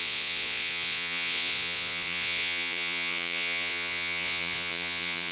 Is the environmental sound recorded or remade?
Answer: remade